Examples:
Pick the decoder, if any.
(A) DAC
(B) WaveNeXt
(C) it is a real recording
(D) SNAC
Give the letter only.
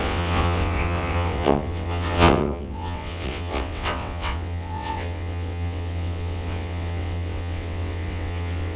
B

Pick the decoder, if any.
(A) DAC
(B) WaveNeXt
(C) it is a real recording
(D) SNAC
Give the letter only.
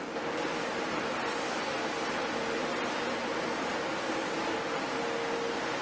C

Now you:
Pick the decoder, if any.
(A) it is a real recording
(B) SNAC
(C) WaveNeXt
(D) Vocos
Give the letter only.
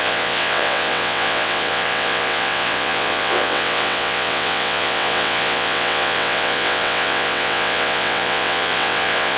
C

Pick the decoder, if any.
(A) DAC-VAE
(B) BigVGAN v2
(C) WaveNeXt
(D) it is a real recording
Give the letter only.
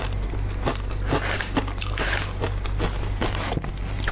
D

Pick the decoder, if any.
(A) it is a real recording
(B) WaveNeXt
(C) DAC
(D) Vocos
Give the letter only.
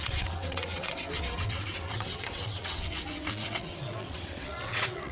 B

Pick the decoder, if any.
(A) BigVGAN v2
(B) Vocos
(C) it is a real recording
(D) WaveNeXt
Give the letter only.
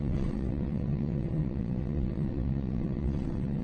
D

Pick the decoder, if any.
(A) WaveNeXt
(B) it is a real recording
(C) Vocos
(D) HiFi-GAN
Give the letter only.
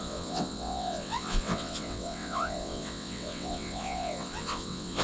A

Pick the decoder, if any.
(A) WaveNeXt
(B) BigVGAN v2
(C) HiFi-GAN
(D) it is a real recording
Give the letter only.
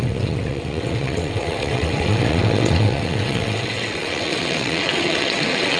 A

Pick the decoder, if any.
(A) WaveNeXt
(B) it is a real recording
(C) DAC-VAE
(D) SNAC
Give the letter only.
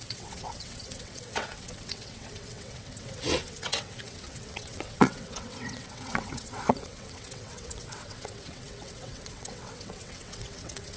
A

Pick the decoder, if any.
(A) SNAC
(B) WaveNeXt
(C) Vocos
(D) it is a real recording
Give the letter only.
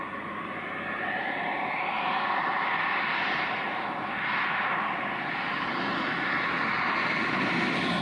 D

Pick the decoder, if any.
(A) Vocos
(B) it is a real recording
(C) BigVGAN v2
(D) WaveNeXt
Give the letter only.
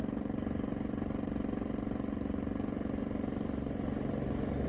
B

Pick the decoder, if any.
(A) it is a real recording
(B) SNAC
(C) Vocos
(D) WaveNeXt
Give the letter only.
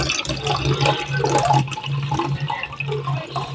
A